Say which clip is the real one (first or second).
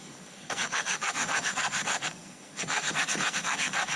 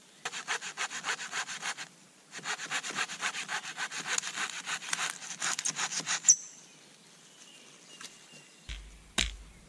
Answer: second